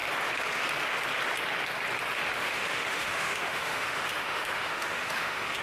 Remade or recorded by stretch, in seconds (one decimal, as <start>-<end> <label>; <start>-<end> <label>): 0.0-2.4 recorded; 2.4-5.6 remade